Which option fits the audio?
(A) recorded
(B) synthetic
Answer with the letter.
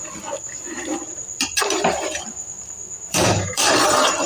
B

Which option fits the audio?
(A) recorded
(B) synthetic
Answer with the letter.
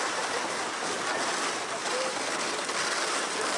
A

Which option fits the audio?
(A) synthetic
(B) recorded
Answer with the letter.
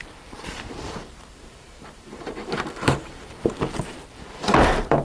A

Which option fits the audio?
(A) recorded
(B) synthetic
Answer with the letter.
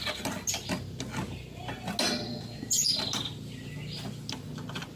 A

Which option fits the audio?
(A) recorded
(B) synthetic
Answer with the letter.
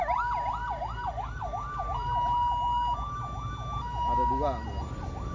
A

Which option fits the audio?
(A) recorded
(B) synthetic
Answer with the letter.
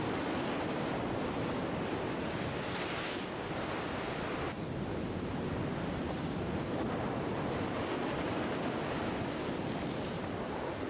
A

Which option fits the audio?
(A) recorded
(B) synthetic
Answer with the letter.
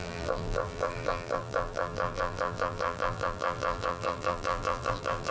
B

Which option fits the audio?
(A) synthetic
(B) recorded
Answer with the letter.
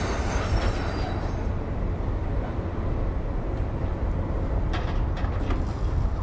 B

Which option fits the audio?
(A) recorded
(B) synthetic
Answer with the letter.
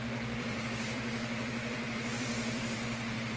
B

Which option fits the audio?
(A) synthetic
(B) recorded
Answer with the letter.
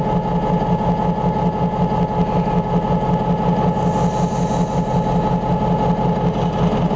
B